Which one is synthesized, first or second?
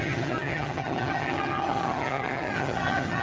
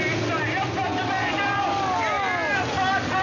first